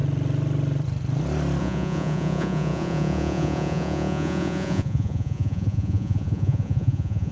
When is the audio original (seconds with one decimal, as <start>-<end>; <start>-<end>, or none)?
0.0-1.6